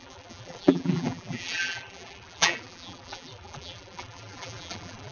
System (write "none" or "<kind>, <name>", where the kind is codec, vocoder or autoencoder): vocoder, BigVGAN v2